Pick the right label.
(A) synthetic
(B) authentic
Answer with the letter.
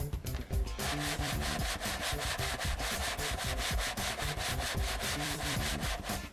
A